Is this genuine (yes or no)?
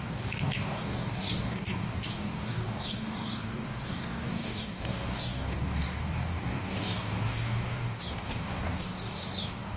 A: no